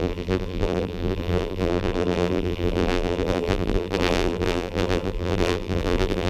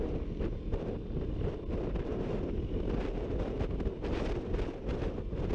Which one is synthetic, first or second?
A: first